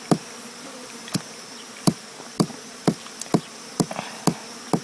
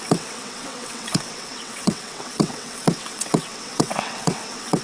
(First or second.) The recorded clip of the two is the first